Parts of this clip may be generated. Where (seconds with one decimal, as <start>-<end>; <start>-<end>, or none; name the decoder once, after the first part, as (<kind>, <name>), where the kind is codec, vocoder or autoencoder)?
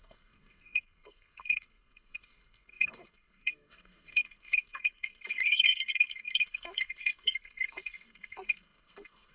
0.0-9.3 (codec, SNAC)